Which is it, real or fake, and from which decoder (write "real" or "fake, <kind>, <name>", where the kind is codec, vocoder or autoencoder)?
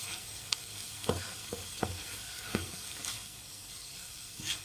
fake, codec, SNAC